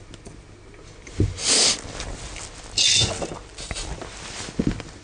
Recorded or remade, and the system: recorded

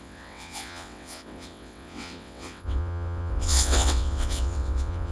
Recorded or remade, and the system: remade, vocoder, WaveNeXt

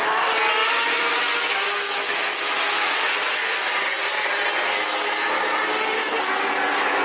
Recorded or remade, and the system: recorded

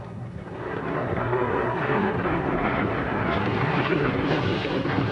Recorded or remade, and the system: remade, codec, SNAC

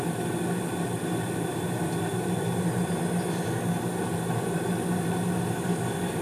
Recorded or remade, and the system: recorded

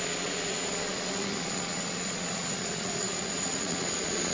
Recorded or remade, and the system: remade, vocoder, Vocos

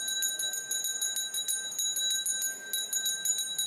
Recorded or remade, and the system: recorded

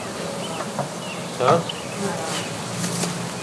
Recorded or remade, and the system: recorded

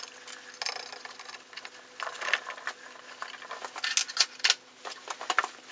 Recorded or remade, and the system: recorded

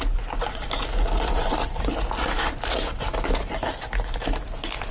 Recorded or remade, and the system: recorded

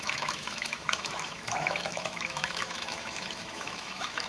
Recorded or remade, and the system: remade, autoencoder, DAC-VAE